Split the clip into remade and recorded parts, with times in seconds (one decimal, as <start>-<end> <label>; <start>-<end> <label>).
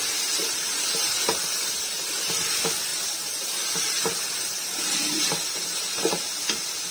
0.0-0.4 recorded; 0.4-2.1 remade; 2.1-2.9 recorded; 2.9-6.2 remade; 6.2-6.9 recorded